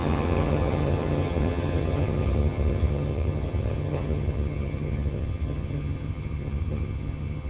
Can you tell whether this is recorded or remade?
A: remade